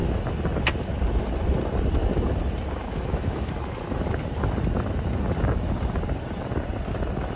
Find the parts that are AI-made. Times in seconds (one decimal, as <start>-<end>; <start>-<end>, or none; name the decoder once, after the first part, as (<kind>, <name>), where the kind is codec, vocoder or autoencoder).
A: 2.8-3.6 (autoencoder, DAC-VAE)